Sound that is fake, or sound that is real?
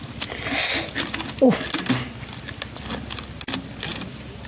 real